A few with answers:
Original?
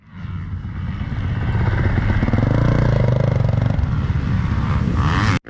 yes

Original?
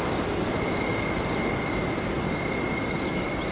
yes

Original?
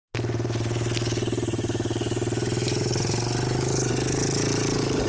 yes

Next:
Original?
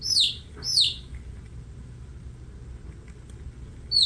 yes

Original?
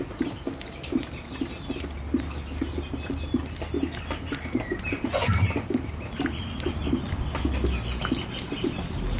yes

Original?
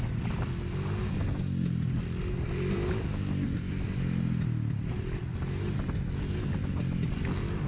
yes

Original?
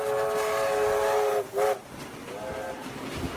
yes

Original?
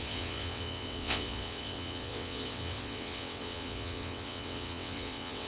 no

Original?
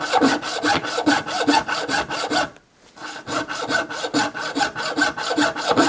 yes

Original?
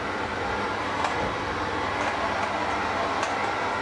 yes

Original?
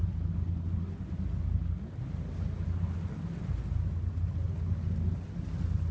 yes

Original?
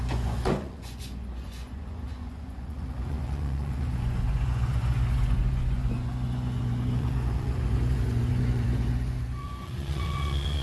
no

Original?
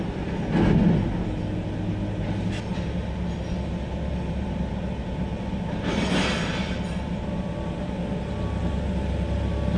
yes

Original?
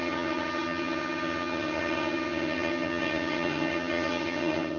no